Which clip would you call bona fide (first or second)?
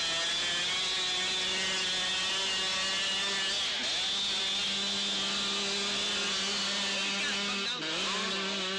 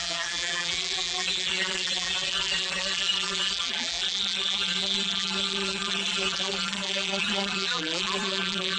first